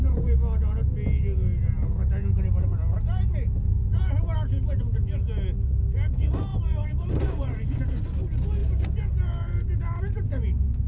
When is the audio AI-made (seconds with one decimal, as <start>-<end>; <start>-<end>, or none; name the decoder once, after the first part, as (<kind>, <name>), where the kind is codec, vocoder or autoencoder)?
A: 6.5-7.9 (vocoder, BigVGAN v2)